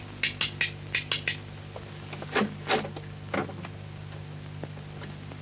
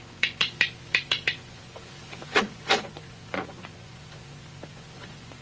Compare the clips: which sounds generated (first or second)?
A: second